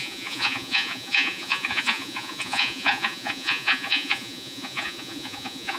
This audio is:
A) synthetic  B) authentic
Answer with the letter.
A